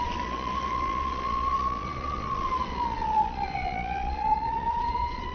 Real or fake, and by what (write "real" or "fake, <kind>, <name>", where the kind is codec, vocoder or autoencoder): fake, vocoder, Vocos